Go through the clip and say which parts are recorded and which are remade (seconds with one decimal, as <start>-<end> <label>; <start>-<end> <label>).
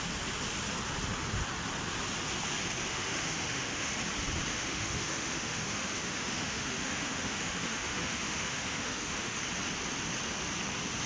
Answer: 0.0-2.9 recorded; 2.9-3.9 remade; 3.9-4.5 recorded; 4.5-9.4 remade; 9.4-11.1 recorded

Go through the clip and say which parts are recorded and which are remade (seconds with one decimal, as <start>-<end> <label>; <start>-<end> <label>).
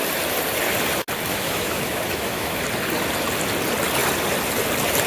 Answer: 0.0-1.3 recorded; 1.3-2.6 remade; 2.6-5.1 recorded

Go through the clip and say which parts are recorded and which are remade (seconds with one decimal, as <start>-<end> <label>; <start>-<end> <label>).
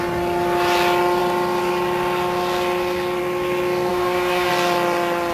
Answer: 0.0-3.9 recorded; 3.9-4.5 remade; 4.5-5.3 recorded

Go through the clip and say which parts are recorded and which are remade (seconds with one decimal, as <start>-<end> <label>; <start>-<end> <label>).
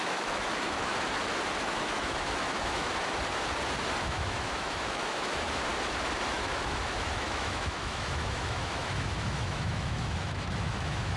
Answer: 0.0-0.9 remade; 0.9-1.6 recorded; 1.6-2.9 remade; 2.9-4.0 recorded; 4.0-5.7 remade; 5.7-6.3 recorded; 6.3-11.2 remade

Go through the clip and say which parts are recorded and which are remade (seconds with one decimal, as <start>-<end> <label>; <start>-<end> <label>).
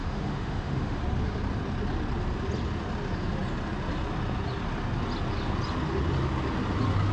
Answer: 0.0-1.0 remade; 1.0-7.1 recorded